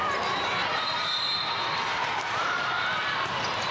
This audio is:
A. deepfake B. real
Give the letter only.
B